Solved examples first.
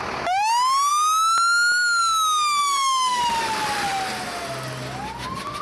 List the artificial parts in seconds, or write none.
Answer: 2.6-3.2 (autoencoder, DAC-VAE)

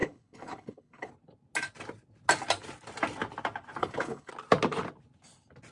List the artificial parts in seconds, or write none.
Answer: 0.0-1.1 (codec, HILCodec); 3.8-4.3

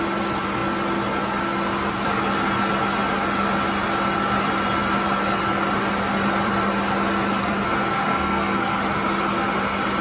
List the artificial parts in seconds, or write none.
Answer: 7.9-8.8 (codec, SNAC)

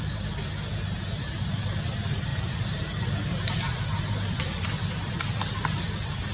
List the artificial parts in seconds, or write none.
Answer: 2.3-6.3 (vocoder, BigVGAN v2)

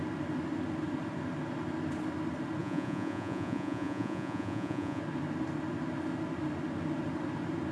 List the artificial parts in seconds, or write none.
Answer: 2.6-5.0 (vocoder, Vocos)